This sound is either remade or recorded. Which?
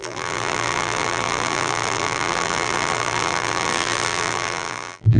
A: remade